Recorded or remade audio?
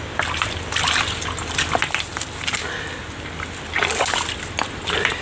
recorded